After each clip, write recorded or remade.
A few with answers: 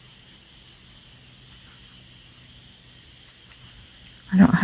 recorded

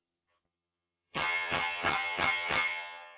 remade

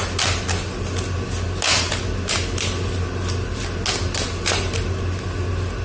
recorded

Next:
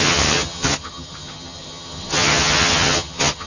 remade